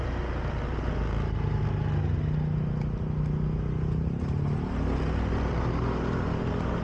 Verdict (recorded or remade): recorded